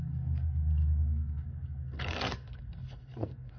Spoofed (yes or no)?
yes